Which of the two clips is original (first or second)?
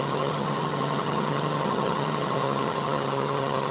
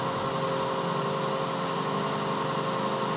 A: second